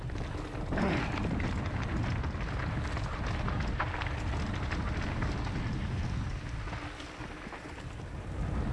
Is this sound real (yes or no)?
yes